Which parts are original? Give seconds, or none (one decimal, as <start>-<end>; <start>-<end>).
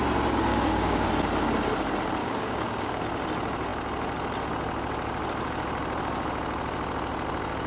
0.0-0.5; 1.1-2.2; 3.0-7.7